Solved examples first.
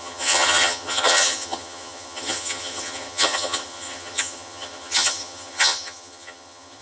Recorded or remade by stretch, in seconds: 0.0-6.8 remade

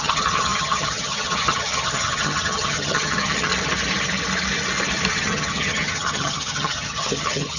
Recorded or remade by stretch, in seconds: 0.0-3.5 remade; 3.5-5.1 recorded; 5.1-7.6 remade

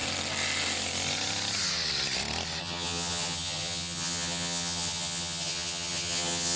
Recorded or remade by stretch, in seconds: 0.0-2.6 recorded; 2.6-6.6 remade

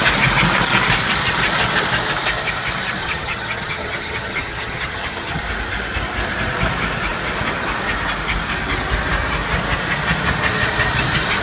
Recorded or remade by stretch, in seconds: 0.0-3.0 recorded; 3.0-5.4 remade; 5.4-11.4 recorded

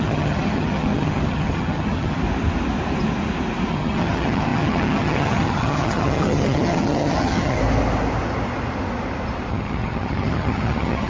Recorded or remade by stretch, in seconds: 0.0-2.2 remade; 2.2-3.7 recorded; 3.7-7.6 remade; 7.6-9.5 recorded; 9.5-11.1 remade

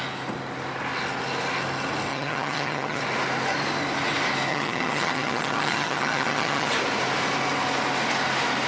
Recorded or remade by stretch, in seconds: 0.0-2.1 recorded; 2.1-3.0 remade; 3.0-4.5 recorded; 4.5-6.7 remade; 6.7-8.7 recorded

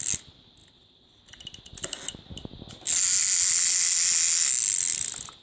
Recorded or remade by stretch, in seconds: 0.0-5.4 recorded